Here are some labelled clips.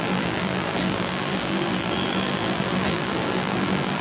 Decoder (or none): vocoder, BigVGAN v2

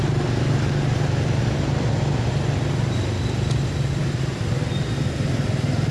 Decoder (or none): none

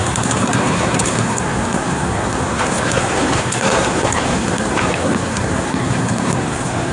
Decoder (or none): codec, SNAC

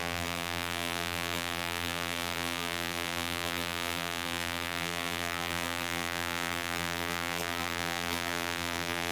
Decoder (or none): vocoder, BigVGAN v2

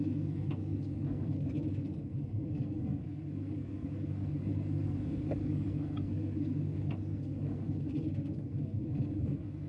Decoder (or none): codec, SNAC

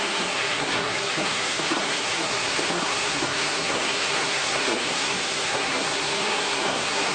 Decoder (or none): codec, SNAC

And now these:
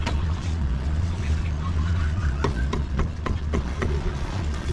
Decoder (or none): vocoder, Vocos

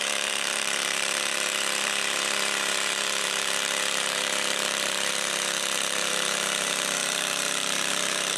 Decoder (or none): vocoder, BigVGAN v2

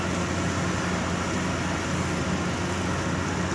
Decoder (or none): none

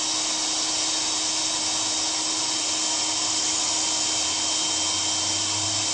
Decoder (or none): none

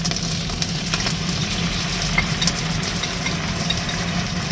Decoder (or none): none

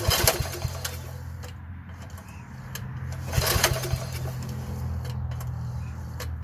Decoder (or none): none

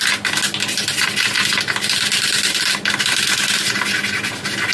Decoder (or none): none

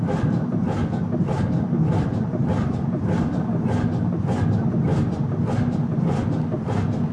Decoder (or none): none